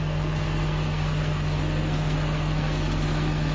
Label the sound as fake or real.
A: fake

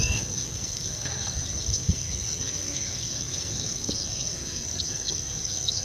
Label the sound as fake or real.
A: fake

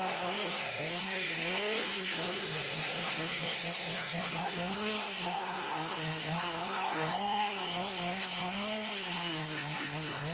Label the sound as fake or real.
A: fake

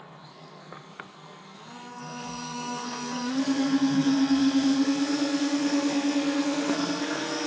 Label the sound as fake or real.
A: fake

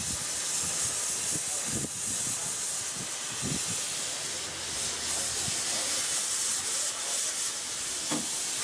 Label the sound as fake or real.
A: real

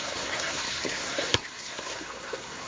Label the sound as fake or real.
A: fake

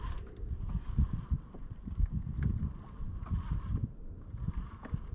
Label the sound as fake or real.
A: real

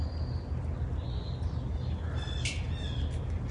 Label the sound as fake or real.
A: real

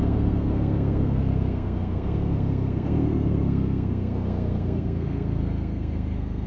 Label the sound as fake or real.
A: fake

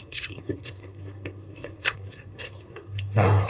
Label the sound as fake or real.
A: fake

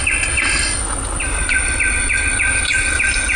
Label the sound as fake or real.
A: real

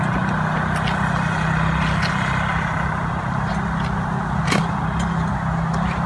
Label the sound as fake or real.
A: real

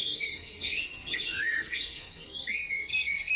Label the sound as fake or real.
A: fake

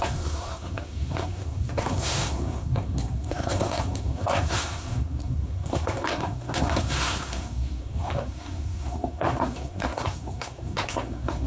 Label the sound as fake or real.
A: fake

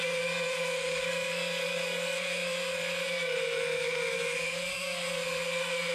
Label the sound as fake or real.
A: fake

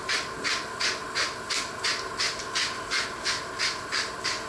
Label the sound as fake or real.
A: real